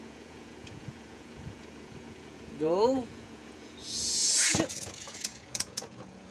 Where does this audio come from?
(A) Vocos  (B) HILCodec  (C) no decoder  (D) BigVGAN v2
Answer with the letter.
A